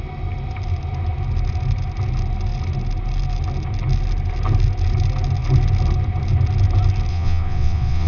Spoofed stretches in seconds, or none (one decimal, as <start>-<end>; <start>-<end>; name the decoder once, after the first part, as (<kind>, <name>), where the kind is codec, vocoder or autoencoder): 7.1-8.1 (vocoder, WaveNeXt)